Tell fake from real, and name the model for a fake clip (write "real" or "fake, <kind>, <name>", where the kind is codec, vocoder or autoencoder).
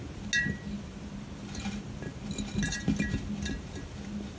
real